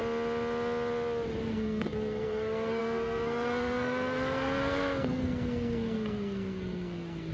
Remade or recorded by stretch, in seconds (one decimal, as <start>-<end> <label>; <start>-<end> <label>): 0.0-1.4 recorded; 1.4-7.3 remade